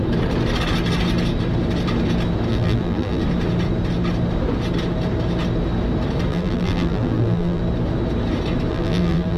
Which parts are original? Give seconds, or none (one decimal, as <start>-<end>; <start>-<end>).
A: 0.0-2.5; 3.2-6.3; 7.6-8.7